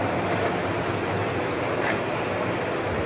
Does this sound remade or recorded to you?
recorded